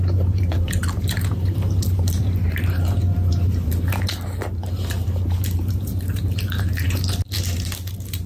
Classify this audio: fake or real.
fake